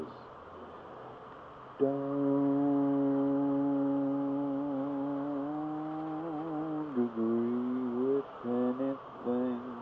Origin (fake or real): real